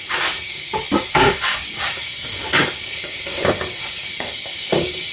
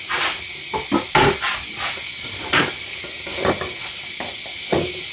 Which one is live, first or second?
second